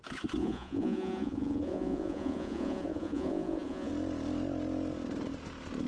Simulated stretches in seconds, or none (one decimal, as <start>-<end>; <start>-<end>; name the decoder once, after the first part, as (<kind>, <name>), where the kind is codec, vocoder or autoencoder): 0.4-3.9 (vocoder, Vocos)